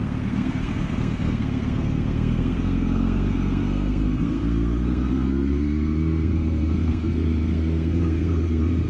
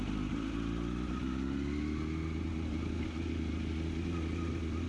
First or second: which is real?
second